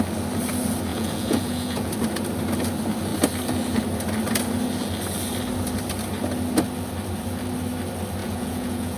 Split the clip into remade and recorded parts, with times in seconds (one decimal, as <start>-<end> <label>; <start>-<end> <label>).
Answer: 0.0-0.9 recorded; 0.9-1.9 remade; 1.9-8.2 recorded; 8.2-9.0 remade

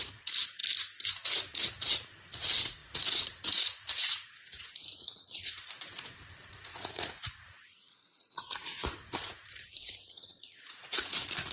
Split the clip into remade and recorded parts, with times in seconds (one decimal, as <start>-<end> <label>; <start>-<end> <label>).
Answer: 0.0-0.6 remade; 0.6-1.1 recorded; 1.1-11.5 remade

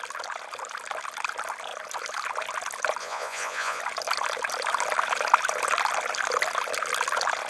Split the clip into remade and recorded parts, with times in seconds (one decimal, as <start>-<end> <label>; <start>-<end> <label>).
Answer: 0.0-3.0 recorded; 3.0-3.8 remade; 3.8-7.5 recorded

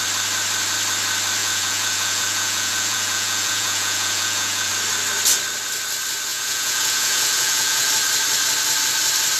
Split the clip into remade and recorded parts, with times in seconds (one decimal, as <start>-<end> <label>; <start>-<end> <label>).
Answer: 0.0-1.4 recorded; 1.4-4.7 remade; 4.7-6.3 recorded; 6.3-7.9 remade; 7.9-9.4 recorded

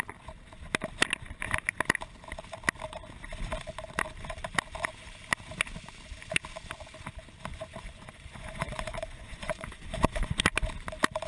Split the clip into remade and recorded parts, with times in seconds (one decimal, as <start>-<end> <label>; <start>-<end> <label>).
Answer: 0.0-7.5 recorded; 7.5-10.3 remade; 10.3-11.3 recorded

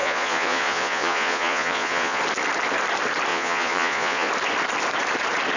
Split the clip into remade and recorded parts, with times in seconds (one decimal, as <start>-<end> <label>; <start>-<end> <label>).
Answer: 0.0-2.2 remade; 2.2-3.3 recorded; 3.3-4.3 remade; 4.3-5.6 recorded

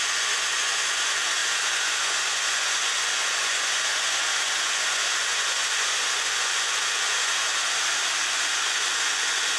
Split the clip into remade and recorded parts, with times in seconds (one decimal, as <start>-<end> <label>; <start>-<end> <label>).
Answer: 0.0-7.5 remade; 7.5-8.3 recorded; 8.3-9.6 remade